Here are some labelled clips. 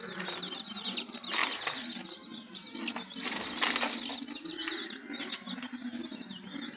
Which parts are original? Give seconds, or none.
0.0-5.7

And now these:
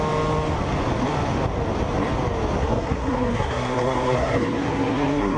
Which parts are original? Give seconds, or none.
0.0-2.6

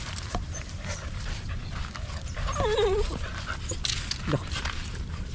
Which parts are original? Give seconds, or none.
1.6-2.6; 3.3-4.5

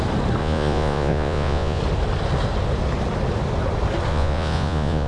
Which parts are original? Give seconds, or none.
0.0-0.4; 1.8-4.1